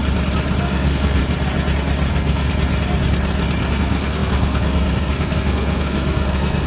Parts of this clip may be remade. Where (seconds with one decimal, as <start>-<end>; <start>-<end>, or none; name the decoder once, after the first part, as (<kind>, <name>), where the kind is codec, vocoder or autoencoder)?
0.6-1.2 (codec, SNAC); 2.1-2.5; 3.7-6.7